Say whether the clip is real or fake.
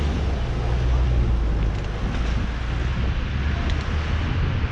real